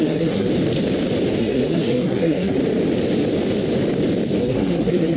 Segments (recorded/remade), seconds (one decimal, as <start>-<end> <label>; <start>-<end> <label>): 0.0-0.5 remade; 0.5-1.4 recorded; 1.4-2.6 remade; 2.6-4.4 recorded; 4.4-5.2 remade